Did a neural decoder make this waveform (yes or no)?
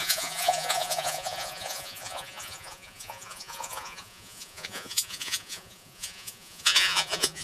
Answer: yes